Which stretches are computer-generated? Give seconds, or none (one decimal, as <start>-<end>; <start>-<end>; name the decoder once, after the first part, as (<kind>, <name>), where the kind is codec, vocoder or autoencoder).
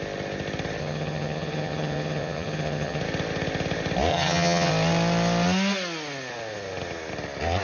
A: 0.8-3.0 (vocoder, HiFi-GAN); 4.1-4.7